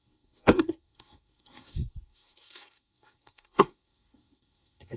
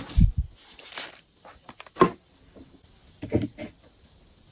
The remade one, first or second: first